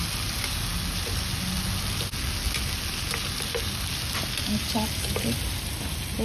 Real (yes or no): yes